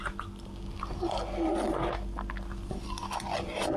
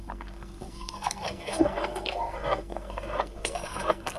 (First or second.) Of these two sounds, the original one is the first